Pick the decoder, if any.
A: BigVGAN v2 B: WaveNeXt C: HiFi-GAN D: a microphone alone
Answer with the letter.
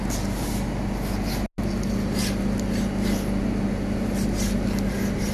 D